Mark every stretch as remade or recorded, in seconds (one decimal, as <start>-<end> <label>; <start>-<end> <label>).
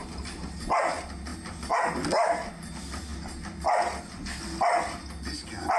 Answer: 0.0-5.8 recorded